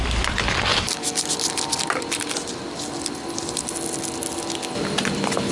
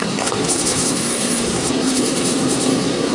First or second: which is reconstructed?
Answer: second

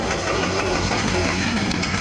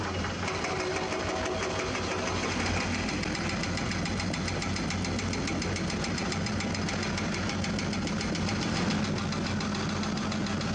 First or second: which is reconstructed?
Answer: first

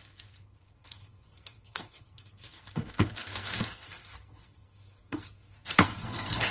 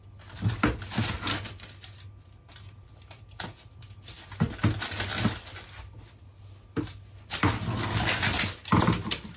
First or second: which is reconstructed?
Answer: first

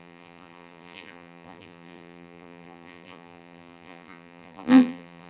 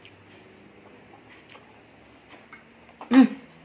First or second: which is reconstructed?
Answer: first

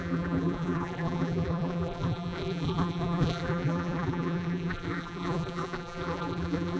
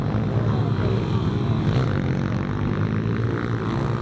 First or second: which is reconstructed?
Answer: first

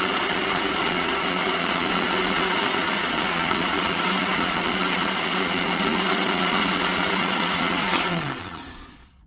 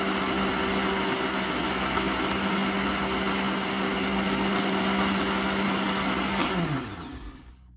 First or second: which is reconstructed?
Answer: first